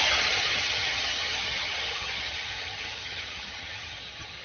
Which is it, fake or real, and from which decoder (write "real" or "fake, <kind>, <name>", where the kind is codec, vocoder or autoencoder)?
fake, vocoder, HiFi-GAN